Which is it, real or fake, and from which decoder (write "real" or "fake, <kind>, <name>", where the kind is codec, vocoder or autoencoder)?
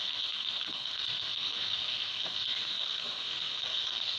fake, codec, SNAC